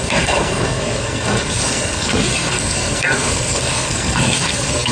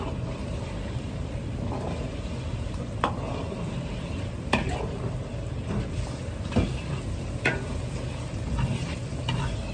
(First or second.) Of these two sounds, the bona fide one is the second